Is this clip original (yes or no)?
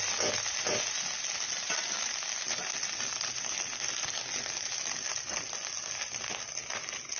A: yes